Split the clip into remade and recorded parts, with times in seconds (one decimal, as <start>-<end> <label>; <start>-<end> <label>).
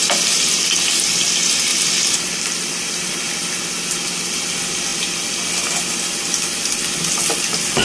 0.0-1.7 recorded; 1.7-3.1 remade; 3.1-4.9 recorded; 4.9-5.5 remade; 5.5-7.8 recorded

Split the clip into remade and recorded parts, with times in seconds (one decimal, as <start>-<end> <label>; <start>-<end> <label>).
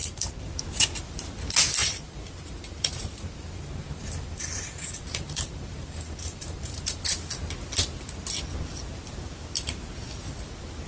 0.0-0.6 remade; 0.6-1.8 recorded; 1.8-7.0 remade; 7.0-10.9 recorded